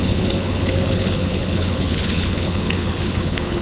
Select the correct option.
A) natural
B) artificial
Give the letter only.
B